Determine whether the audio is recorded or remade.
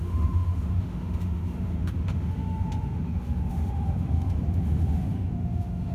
remade